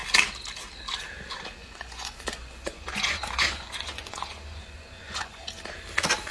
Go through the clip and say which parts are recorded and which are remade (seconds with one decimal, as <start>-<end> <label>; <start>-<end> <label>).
0.0-1.6 recorded; 1.6-5.4 remade; 5.4-6.3 recorded